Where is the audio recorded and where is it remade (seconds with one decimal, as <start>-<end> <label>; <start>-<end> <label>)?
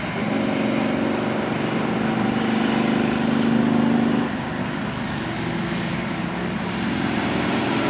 0.0-4.6 recorded; 4.6-6.6 remade; 6.6-7.9 recorded